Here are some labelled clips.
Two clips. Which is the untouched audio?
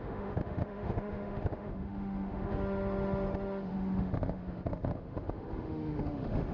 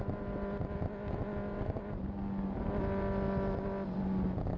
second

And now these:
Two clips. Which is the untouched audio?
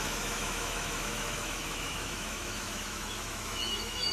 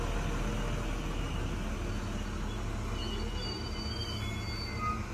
second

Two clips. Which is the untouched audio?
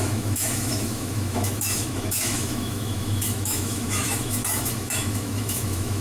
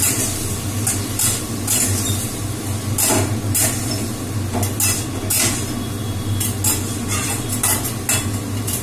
second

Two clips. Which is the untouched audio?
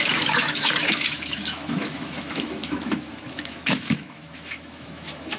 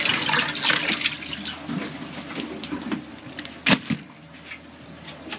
second